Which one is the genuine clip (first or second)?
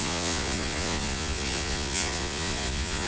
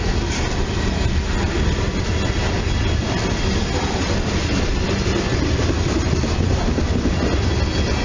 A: second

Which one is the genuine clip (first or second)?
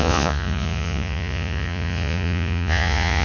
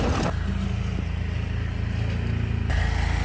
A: second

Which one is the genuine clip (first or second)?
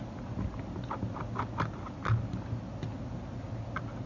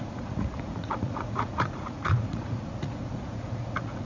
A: first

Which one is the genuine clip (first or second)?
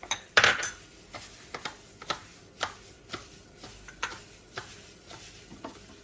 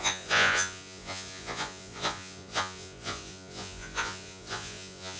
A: first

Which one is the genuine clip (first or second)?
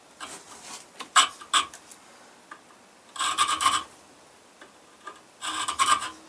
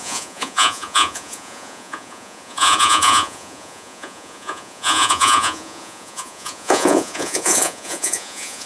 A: first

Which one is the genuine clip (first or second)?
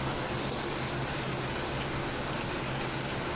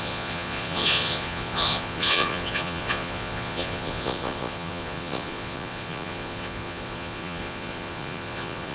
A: first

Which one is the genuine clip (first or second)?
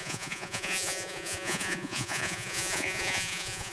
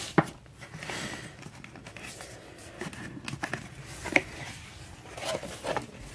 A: second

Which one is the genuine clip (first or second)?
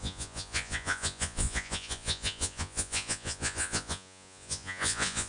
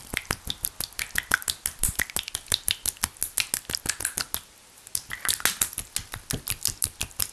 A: second